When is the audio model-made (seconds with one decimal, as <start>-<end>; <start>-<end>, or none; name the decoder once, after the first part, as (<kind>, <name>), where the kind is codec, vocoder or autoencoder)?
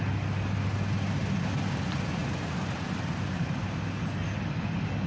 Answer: 2.2-3.7 (vocoder, BigVGAN v2)